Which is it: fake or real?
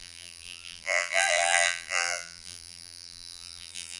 fake